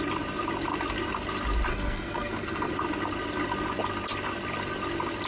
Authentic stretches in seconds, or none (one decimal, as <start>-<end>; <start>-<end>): 0.0-1.7; 2.7-5.3